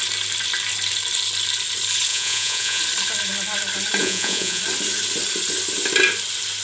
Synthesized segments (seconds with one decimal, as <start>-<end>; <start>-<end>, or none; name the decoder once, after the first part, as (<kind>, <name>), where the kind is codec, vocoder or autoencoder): 2.1-2.8 (vocoder, Vocos); 4.0-4.6